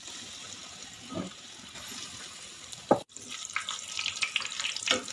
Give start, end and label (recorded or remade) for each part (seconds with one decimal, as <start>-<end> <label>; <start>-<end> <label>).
0.0-5.1 recorded